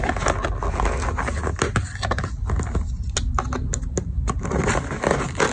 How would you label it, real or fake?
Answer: real